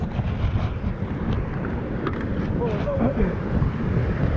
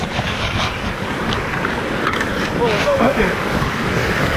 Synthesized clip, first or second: second